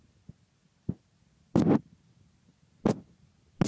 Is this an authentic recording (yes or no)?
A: yes